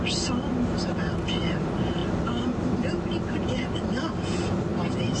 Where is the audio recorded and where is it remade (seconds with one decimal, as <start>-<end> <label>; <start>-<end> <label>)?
0.0-5.2 recorded